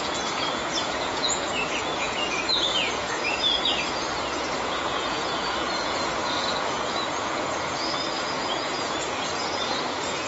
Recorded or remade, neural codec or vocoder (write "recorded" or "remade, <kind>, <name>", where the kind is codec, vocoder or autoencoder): remade, vocoder, Vocos